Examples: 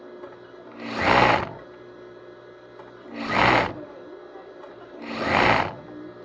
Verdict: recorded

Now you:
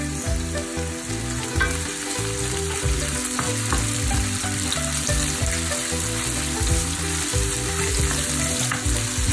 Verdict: recorded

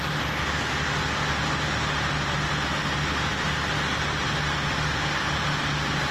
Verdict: recorded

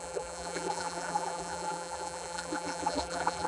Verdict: remade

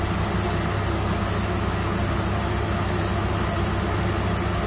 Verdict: recorded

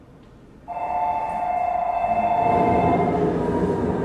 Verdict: recorded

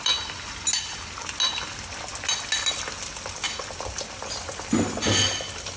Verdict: recorded